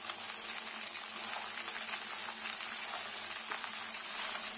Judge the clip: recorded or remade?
recorded